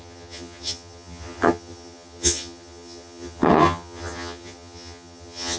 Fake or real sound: fake